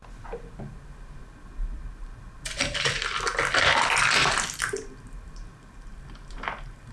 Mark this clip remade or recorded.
recorded